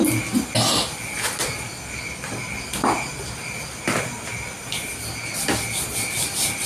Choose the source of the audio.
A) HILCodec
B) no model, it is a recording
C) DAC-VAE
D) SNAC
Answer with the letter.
B